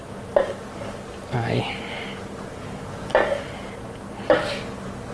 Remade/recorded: recorded